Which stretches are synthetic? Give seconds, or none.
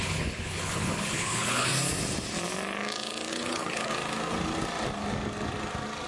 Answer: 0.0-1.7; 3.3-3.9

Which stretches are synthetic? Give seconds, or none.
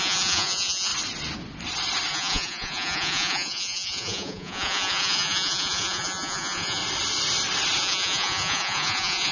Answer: 0.0-0.9; 2.1-6.8; 7.8-9.3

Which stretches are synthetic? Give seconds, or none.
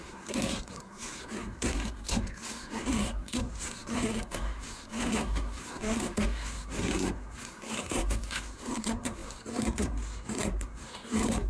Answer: 0.0-11.5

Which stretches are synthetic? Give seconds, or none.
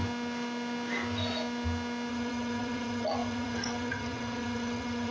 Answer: 2.1-5.1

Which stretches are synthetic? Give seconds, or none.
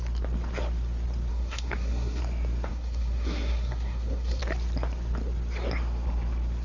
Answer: 1.3-2.2; 2.7-4.4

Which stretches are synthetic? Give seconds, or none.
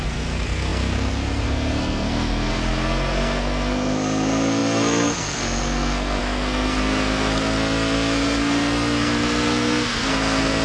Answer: 0.0-10.6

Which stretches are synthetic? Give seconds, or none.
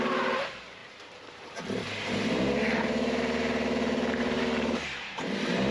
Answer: 0.0-5.7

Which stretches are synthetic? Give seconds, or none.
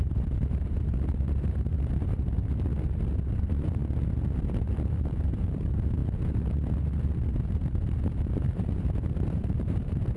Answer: 0.0-2.4; 3.3-3.8; 4.9-6.0; 7.3-10.2